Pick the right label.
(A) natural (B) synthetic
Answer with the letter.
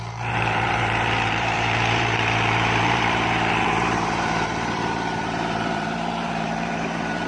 B